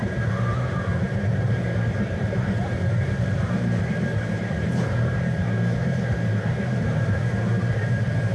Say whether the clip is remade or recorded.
remade